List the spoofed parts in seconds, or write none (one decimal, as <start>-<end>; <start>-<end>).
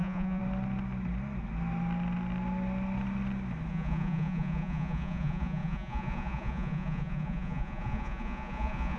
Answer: 0.0-0.4; 3.7-9.0